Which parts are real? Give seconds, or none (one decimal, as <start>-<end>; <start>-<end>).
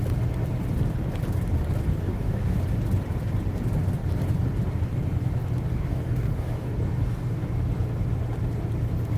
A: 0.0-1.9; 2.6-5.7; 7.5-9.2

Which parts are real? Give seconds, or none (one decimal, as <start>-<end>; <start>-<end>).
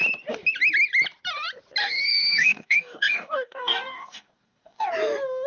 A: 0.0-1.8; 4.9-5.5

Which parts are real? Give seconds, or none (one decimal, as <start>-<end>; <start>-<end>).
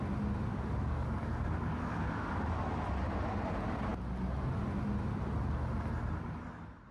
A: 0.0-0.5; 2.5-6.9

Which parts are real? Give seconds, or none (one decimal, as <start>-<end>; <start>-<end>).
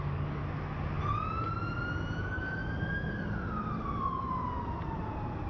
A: 0.4-2.2; 2.6-5.5